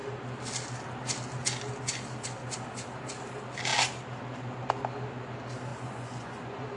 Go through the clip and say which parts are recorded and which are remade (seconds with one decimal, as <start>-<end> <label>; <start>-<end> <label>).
0.0-5.7 recorded; 5.7-6.8 remade